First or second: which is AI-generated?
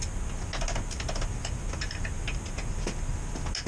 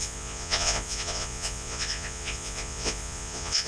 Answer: second